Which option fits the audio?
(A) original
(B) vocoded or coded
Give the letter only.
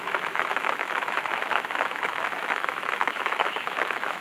B